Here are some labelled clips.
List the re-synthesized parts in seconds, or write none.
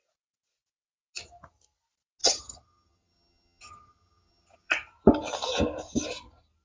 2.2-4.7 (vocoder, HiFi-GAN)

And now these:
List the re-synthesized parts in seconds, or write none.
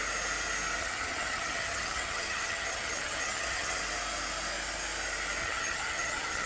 0.8-3.8 (vocoder, HiFi-GAN); 5.4-6.5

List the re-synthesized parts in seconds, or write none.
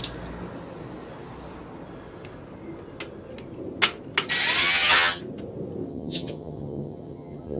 4.6-5.2 (vocoder, HiFi-GAN); 5.9-7.6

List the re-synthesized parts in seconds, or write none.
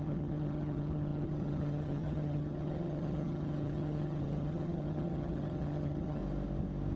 0.0-6.2 (vocoder, HiFi-GAN)